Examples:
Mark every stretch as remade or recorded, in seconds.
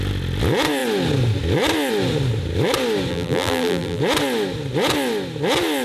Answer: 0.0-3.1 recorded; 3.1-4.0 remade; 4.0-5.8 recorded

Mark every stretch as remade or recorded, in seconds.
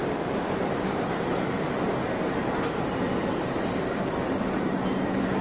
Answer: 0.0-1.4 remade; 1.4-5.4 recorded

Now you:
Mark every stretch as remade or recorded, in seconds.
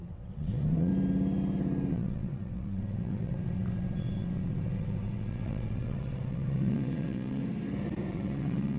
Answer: 0.0-0.9 remade; 0.9-1.9 recorded; 1.9-7.4 remade; 7.4-8.1 recorded; 8.1-8.8 remade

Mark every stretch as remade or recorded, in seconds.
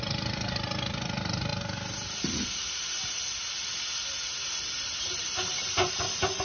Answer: 0.0-6.4 recorded